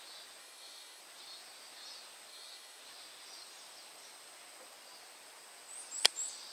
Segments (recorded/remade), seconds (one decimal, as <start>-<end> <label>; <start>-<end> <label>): 0.0-0.4 recorded; 0.4-1.0 remade; 1.0-2.3 recorded; 2.3-2.8 remade; 2.8-6.5 recorded

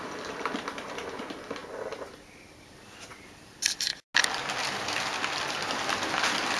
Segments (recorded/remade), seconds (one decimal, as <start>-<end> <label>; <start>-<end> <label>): 0.0-1.6 remade; 1.6-2.1 recorded; 2.1-3.9 remade; 3.9-5.5 recorded; 5.5-6.6 remade

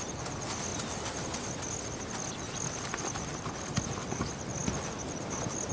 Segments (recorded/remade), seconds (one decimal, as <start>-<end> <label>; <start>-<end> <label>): 0.0-5.7 recorded